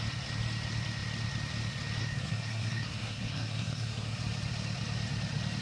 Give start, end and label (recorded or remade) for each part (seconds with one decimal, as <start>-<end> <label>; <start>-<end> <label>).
0.0-2.0 recorded; 2.0-4.2 remade; 4.2-5.6 recorded